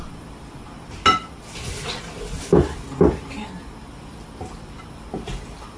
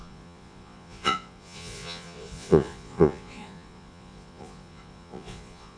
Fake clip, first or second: second